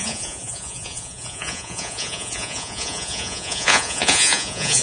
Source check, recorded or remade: remade